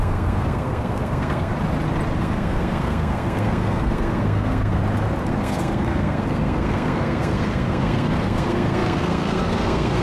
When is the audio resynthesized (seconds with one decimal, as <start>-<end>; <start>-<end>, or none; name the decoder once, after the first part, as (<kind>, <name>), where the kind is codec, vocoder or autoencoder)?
0.0-1.5 (codec, SNAC); 2.2-4.8; 5.3-10.0